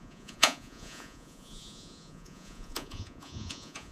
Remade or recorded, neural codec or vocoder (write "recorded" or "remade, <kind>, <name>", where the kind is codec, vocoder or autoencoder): remade, vocoder, Vocos